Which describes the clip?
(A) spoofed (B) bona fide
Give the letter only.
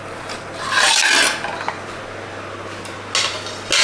B